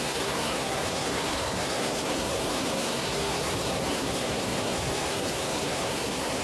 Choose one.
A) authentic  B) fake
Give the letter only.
B